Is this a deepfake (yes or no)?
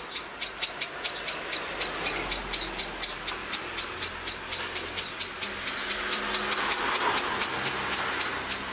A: no